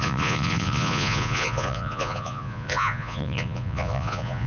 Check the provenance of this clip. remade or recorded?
remade